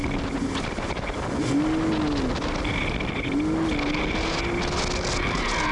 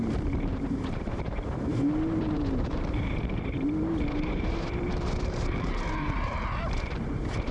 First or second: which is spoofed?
second